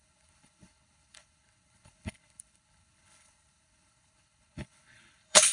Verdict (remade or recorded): remade